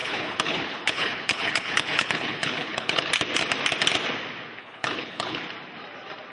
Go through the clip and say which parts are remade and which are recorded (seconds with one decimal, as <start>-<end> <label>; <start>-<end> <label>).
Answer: 0.0-3.1 remade; 3.1-4.6 recorded; 4.6-5.4 remade; 5.4-6.3 recorded